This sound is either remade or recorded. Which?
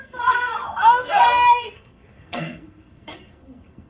remade